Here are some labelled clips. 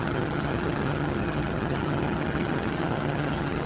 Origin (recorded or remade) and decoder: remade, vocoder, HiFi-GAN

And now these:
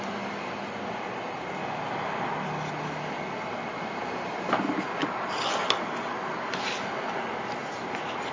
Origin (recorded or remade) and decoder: recorded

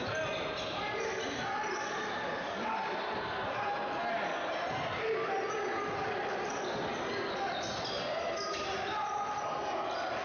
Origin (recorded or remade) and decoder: recorded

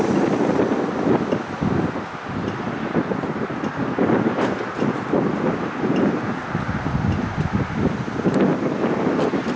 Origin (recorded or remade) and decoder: recorded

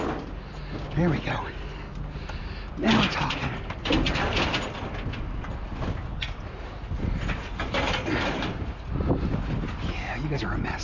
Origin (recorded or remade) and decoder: recorded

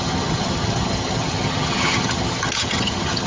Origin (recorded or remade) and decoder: remade, vocoder, HiFi-GAN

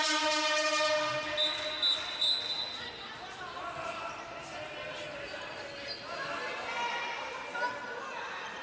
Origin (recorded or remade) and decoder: recorded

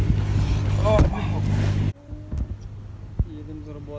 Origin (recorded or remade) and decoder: recorded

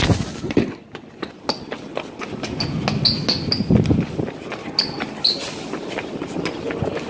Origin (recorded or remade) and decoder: recorded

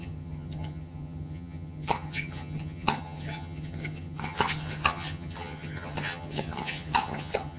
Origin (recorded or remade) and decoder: remade, vocoder, HiFi-GAN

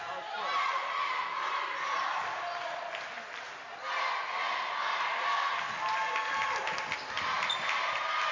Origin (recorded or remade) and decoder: recorded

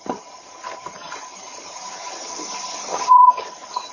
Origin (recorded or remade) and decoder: remade, vocoder, HiFi-GAN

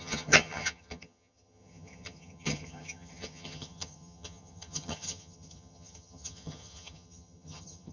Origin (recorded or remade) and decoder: remade, vocoder, HiFi-GAN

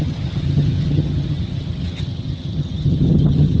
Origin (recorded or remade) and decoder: remade, vocoder, HiFi-GAN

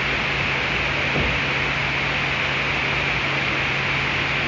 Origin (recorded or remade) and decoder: recorded